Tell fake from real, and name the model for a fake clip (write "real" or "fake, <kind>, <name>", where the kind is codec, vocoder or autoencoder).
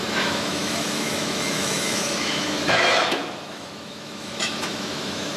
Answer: fake, autoencoder, DAC-VAE